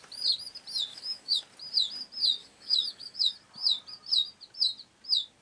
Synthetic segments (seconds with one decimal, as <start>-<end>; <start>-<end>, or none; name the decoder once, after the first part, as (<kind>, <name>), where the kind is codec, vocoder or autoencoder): 0.9-1.4 (autoencoder, DAC-VAE); 2.4-3.3